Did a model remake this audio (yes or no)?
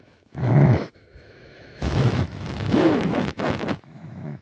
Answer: yes